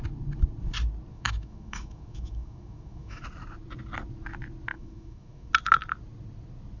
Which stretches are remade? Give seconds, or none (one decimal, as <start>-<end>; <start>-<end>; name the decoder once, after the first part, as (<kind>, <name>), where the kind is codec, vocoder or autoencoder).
1.1-3.2 (autoencoder, DAC-VAE); 4.7-5.5